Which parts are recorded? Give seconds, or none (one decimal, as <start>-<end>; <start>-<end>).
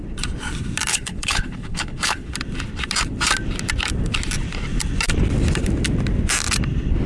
0.0-0.9; 2.3-7.1